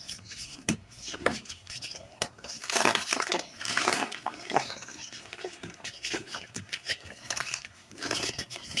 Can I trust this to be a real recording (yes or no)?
no